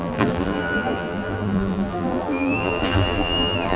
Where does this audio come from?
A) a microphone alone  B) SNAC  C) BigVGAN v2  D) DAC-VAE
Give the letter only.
C